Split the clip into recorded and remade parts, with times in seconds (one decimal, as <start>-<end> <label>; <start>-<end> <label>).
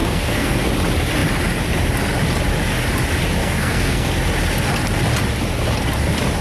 0.0-0.7 remade; 0.7-3.4 recorded; 3.4-4.1 remade; 4.1-6.4 recorded